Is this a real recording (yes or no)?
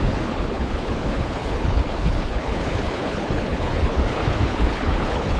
no